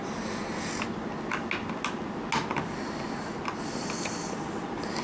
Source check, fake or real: real